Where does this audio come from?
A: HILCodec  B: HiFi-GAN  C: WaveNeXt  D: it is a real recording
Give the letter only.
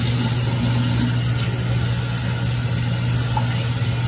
D